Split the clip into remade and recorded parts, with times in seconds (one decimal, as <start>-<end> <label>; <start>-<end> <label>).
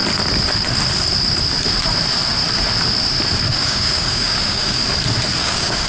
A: 0.0-3.5 recorded; 3.5-4.8 remade; 4.8-5.4 recorded; 5.4-5.9 remade